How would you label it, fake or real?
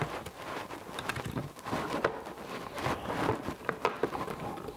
real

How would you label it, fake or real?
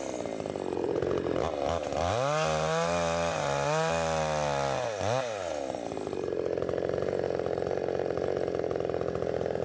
real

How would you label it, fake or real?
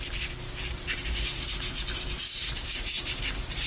fake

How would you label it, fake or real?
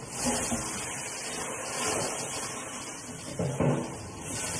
real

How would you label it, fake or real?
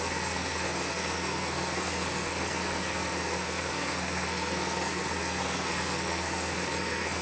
fake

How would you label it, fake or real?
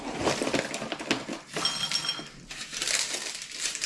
real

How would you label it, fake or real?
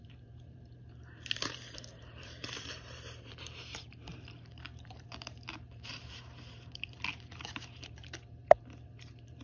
fake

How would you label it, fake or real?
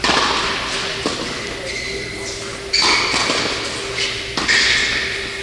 real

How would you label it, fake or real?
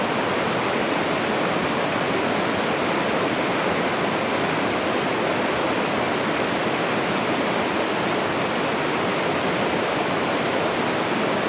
real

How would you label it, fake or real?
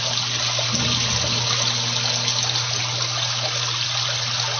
real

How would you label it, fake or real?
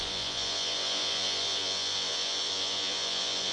fake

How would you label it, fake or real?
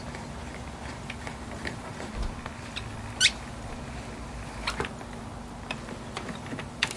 real